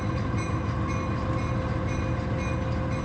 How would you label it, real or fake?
real